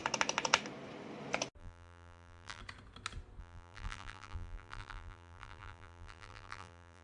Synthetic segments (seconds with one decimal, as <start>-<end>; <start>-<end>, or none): 1.6-2.6; 3.4-7.0